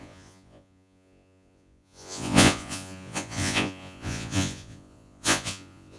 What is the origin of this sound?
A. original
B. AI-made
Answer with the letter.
B